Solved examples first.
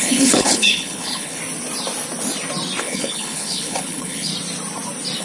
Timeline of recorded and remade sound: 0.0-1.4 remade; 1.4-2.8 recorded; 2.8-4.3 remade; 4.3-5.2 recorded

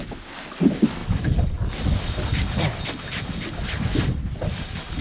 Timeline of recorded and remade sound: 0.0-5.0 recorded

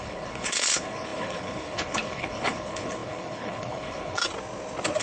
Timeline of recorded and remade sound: 0.0-4.2 remade; 4.2-5.0 recorded